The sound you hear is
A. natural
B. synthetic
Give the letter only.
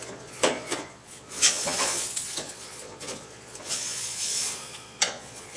B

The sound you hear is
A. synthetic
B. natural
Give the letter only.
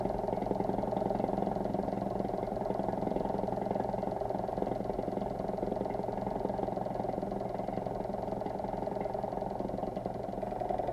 B